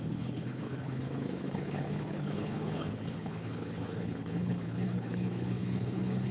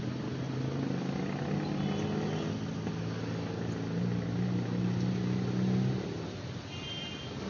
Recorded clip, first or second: second